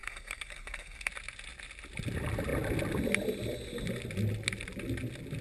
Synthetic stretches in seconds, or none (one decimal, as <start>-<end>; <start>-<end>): 0.0-1.1